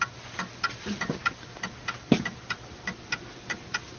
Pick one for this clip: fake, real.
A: real